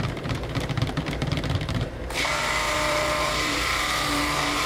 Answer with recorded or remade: remade